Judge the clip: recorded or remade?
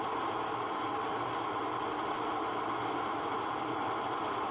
recorded